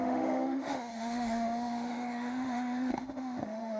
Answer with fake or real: fake